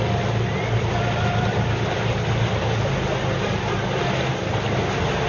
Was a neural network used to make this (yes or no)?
no